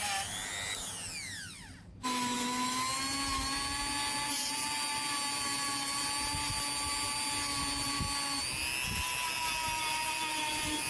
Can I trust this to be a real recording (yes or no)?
yes